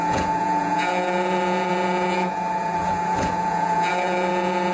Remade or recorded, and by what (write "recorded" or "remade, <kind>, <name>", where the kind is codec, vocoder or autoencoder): remade, vocoder, Vocos